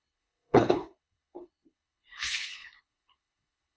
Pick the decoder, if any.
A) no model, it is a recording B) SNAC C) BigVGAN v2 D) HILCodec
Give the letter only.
D